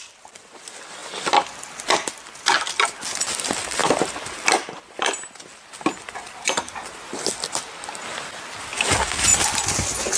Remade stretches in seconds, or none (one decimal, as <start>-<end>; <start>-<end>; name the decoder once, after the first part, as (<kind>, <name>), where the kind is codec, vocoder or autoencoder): none